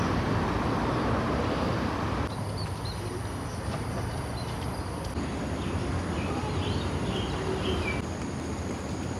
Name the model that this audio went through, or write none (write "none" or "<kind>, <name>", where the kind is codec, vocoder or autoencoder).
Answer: none